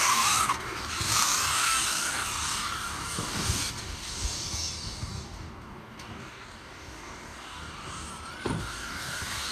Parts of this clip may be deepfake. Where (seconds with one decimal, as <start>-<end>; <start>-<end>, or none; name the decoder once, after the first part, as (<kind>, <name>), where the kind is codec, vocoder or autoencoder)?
0.0-8.1 (codec, DAC); 8.6-9.5